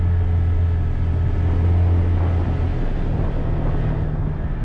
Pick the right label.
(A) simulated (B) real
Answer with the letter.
B